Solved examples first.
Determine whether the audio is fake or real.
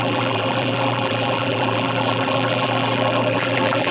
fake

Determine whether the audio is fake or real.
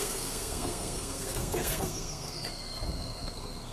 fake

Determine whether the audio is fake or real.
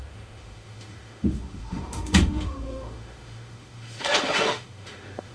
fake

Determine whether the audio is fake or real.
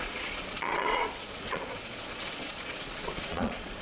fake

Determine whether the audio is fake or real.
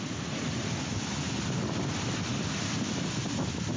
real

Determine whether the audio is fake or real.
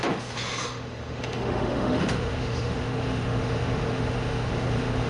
fake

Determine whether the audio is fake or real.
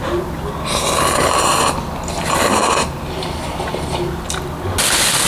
real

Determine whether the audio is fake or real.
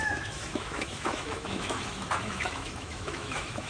fake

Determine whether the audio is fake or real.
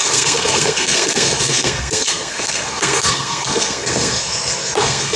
fake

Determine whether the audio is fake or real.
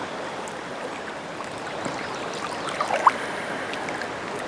real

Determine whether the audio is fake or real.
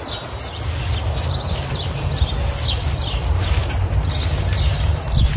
real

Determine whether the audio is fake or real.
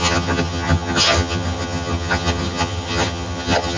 fake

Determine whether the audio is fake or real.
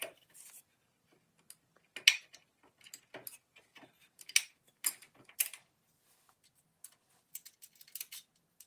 real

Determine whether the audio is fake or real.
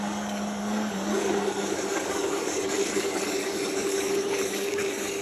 fake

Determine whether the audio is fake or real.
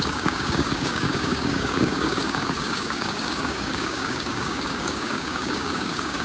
fake